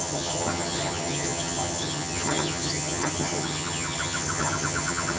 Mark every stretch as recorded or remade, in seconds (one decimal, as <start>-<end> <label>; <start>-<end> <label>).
0.0-5.2 remade